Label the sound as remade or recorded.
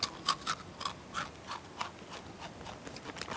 recorded